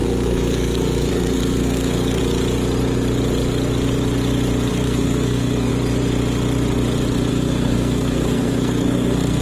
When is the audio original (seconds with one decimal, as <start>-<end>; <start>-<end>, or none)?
2.2-4.7; 5.7-7.3